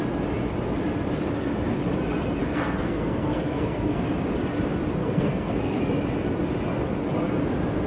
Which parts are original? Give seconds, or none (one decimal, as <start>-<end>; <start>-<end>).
0.0-2.4; 4.0-5.0; 5.8-7.9